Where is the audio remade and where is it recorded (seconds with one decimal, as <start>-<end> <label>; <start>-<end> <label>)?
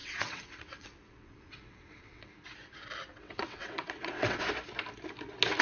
0.0-2.3 remade; 2.3-3.1 recorded; 3.1-4.4 remade; 4.4-5.6 recorded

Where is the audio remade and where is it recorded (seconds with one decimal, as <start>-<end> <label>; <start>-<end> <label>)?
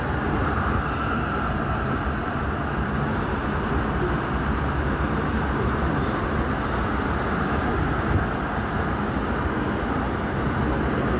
0.0-11.2 recorded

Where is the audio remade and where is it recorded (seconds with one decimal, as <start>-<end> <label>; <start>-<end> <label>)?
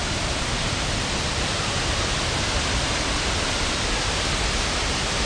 0.0-5.3 recorded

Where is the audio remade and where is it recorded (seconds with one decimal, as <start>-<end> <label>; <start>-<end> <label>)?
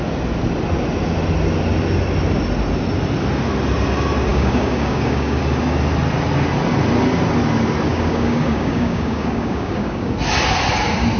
0.0-4.3 recorded; 4.3-5.4 remade; 5.4-7.9 recorded; 7.9-10.1 remade; 10.1-11.2 recorded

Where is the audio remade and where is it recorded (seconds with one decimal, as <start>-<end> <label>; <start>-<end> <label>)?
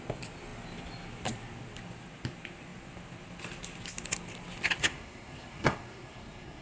0.0-4.8 recorded; 4.8-6.6 remade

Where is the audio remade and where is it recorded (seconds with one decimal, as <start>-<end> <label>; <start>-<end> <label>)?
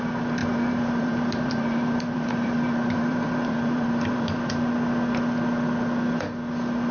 0.0-0.4 recorded; 0.4-4.5 remade; 4.5-6.9 recorded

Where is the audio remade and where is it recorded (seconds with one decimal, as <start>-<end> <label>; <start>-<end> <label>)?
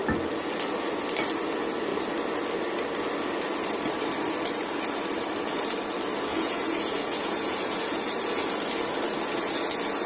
0.0-6.3 recorded; 6.3-8.0 remade; 8.0-10.1 recorded